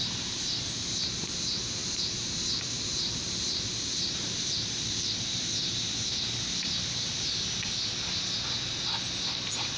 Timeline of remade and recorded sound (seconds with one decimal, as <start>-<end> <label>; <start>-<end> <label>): 0.0-1.4 remade; 1.4-1.8 recorded; 1.8-5.5 remade; 5.5-9.8 recorded